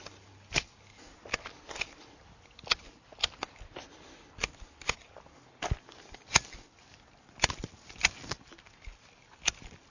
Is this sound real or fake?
real